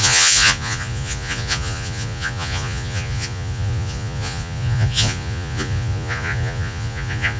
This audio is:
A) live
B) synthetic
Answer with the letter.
B